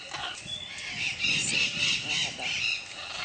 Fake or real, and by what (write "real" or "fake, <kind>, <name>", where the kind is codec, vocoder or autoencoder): real